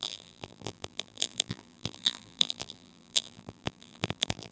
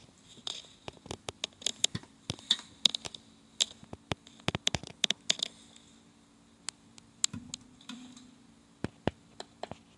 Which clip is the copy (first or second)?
first